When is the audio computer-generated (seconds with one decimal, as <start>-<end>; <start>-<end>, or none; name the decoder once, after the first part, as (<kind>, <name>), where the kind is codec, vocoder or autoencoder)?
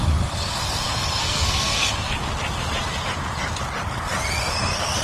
1.2-1.9 (codec, SNAC)